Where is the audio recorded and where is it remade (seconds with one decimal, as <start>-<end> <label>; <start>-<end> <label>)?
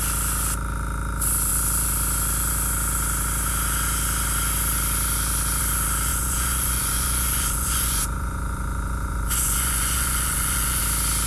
0.0-6.1 recorded; 6.1-10.8 remade; 10.8-11.3 recorded